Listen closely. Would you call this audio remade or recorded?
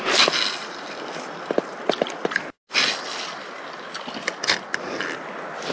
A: recorded